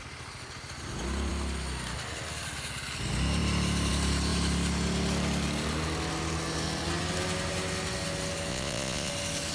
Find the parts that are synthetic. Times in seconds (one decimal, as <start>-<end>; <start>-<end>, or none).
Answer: 8.5-9.1